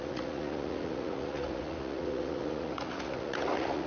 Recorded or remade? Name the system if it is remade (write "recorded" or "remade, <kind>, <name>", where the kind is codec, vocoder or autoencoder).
remade, vocoder, Vocos